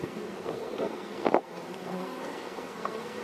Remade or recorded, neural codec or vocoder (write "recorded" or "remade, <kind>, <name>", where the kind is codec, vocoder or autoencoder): remade, codec, SNAC